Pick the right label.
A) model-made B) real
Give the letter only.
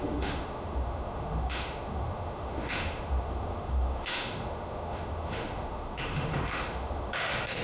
A